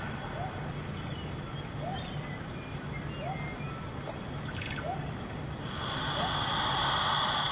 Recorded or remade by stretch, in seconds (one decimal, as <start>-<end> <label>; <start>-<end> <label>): 0.0-1.9 recorded; 1.9-2.9 remade; 2.9-7.5 recorded